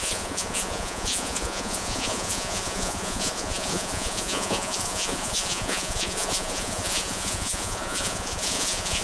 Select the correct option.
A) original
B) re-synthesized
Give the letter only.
B